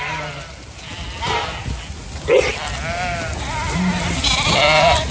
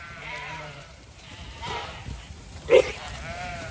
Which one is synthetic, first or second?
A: second